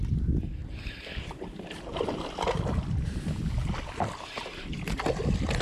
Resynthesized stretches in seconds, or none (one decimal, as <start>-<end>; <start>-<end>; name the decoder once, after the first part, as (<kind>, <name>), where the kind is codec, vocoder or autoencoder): none